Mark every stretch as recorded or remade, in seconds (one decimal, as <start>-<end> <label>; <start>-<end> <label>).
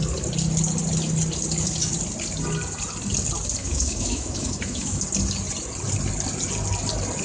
0.0-3.6 recorded; 3.6-5.0 remade; 5.0-7.2 recorded